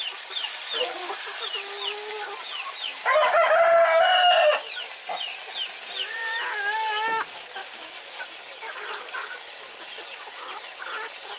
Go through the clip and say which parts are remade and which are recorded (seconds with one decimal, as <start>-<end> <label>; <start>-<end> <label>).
0.0-7.6 recorded; 7.6-8.2 remade; 8.2-11.4 recorded